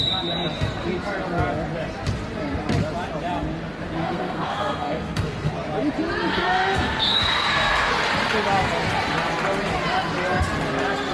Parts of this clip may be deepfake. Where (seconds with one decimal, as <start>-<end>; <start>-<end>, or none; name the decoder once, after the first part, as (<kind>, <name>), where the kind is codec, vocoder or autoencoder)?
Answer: 4.0-5.5 (codec, SNAC); 6.3-7.9